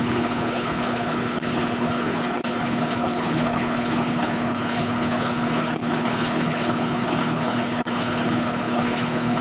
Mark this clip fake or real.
fake